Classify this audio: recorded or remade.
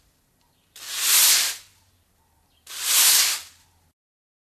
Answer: recorded